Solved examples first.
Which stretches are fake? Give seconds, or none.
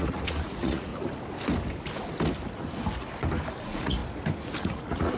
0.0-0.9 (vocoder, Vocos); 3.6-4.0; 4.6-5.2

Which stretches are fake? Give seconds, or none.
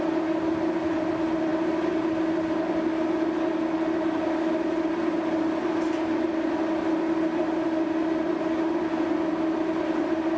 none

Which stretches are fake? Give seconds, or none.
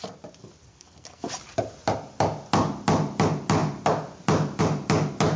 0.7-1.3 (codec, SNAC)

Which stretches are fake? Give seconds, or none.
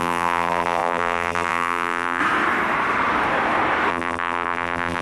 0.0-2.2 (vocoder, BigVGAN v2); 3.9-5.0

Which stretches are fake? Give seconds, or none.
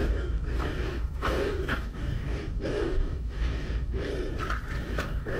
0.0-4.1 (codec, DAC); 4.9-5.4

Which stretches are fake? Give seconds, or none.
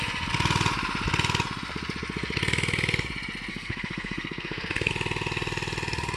3.5-4.9 (codec, SNAC)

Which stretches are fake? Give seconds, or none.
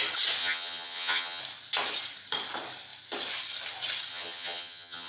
0.4-1.4 (vocoder, HiFi-GAN); 4.1-5.1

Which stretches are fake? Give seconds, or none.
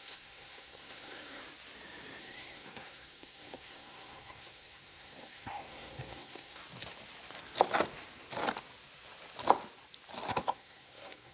0.0-1.4 (codec, SNAC); 2.2-6.6; 10.3-11.3